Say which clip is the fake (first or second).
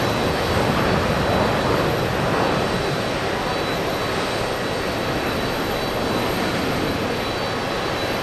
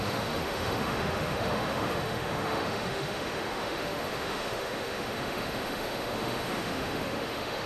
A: second